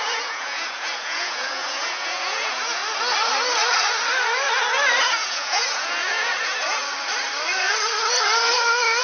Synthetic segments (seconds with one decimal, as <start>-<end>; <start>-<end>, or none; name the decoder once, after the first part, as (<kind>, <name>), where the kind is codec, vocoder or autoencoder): 0.0-2.8 (vocoder, Vocos); 5.0-6.8